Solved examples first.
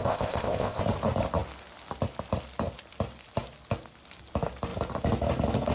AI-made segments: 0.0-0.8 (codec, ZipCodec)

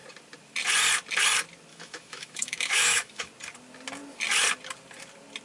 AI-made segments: 1.7-3.3 (autoencoder, DAC-VAE)

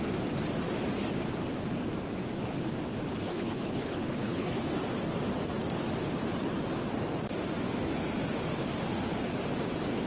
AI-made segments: 3.3-4.7 (codec, HILCodec)

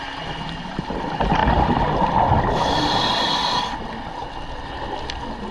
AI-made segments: none